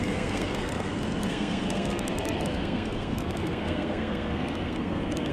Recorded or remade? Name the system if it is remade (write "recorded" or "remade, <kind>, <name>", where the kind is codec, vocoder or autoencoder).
remade, codec, SNAC